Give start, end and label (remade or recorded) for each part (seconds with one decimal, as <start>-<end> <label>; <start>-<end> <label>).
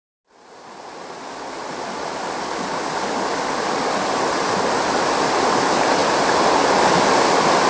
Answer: 0.0-7.7 recorded